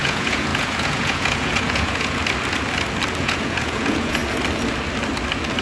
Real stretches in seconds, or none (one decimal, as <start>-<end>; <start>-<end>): 2.2-3.2; 4.2-5.6